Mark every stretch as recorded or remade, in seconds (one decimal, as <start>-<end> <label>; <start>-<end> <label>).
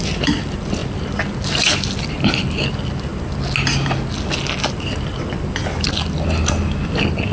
0.0-7.3 recorded